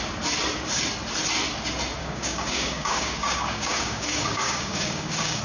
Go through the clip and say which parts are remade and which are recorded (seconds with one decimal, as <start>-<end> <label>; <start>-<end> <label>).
0.0-2.0 recorded; 2.0-5.4 remade